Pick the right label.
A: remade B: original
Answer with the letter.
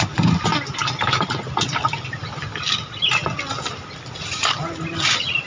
B